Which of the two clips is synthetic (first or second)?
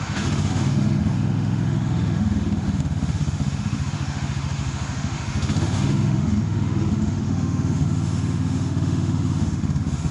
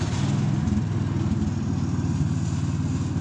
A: first